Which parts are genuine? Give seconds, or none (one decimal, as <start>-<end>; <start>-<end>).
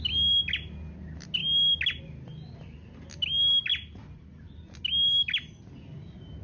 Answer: 0.0-6.4